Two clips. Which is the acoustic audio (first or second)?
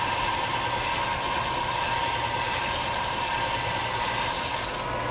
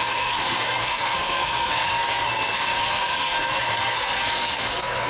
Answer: first